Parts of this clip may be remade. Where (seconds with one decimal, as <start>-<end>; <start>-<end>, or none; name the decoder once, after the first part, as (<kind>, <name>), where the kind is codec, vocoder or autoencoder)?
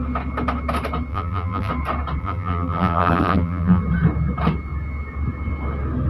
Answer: 1.1-1.7 (vocoder, BigVGAN v2); 2.2-3.8